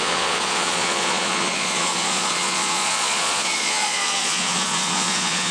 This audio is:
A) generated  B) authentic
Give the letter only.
A